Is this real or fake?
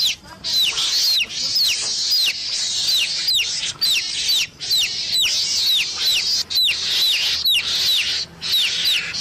real